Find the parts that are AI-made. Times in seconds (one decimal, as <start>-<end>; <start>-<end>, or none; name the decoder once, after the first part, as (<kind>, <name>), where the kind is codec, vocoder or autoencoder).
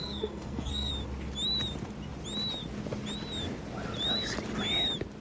0.0-0.9 (codec, SNAC)